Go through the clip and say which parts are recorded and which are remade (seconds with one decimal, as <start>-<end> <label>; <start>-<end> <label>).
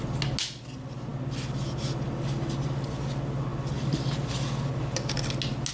0.0-5.7 recorded